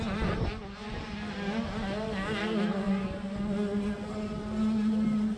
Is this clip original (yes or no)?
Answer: yes